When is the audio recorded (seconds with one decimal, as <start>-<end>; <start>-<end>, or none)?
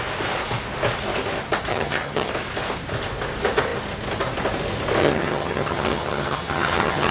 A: 0.0-1.7; 2.3-5.0